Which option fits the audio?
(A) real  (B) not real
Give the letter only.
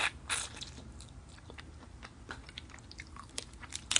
A